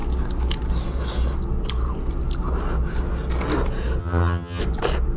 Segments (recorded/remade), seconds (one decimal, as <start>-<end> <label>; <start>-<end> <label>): 0.0-4.0 recorded; 4.0-4.6 remade; 4.6-5.2 recorded